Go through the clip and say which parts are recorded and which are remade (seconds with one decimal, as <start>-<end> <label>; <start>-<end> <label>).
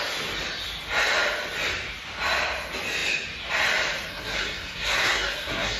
0.0-4.1 recorded; 4.1-5.8 remade